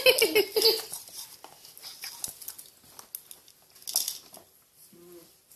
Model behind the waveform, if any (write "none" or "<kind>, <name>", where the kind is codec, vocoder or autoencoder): none